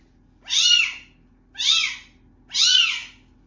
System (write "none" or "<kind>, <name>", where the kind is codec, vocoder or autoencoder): none